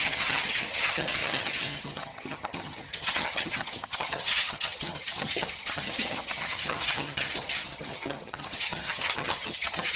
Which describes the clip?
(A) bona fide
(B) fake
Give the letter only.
B